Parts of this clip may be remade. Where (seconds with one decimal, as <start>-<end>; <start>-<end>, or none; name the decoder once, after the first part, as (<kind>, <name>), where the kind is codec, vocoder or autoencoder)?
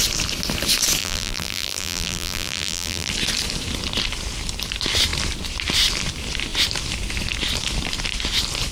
1.0-3.1 (vocoder, BigVGAN v2)